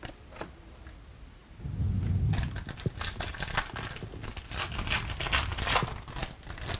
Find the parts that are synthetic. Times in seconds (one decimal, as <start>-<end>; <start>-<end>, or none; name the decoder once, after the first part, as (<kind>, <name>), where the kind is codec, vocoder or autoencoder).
none